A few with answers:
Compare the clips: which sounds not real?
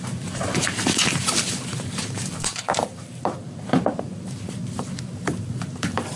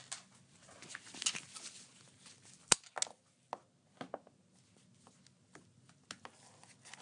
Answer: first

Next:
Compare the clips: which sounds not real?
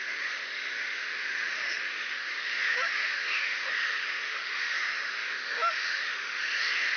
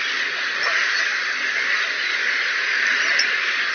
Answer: first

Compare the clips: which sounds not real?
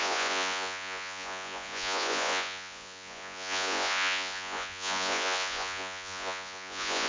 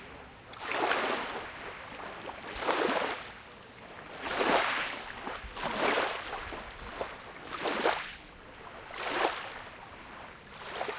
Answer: first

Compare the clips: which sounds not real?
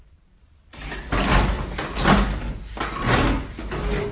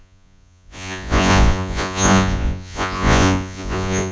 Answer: second